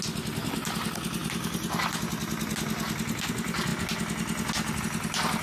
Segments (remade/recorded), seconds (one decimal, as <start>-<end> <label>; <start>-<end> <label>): 0.0-1.2 recorded; 1.2-1.9 remade; 1.9-5.4 recorded